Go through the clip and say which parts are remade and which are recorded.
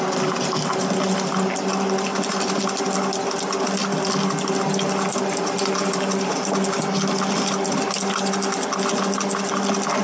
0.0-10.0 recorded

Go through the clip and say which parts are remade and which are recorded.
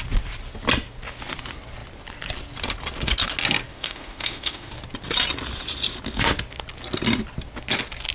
0.0-3.7 recorded; 3.7-4.7 remade; 4.7-8.1 recorded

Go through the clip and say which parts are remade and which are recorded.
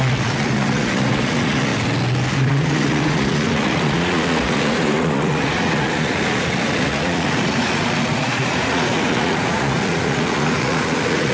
0.0-1.7 remade; 1.7-2.3 recorded; 2.3-11.3 remade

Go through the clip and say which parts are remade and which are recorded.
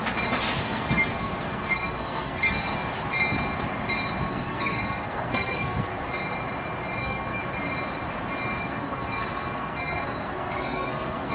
0.0-0.6 recorded; 0.6-2.7 remade; 2.7-4.3 recorded; 4.3-5.9 remade; 5.9-7.0 recorded; 7.0-7.4 remade; 7.4-8.6 recorded; 8.6-11.3 remade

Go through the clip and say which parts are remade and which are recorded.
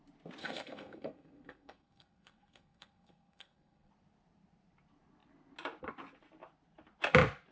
0.0-0.4 recorded; 0.4-3.9 remade; 3.9-7.5 recorded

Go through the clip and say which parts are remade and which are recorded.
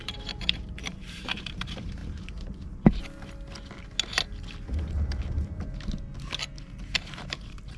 0.0-2.0 remade; 2.0-6.6 recorded; 6.6-7.8 remade